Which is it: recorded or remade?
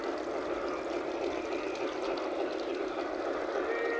recorded